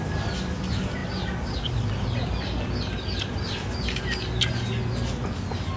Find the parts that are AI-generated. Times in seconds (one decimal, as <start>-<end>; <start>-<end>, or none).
none